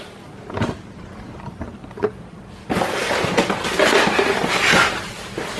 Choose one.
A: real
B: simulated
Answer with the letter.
A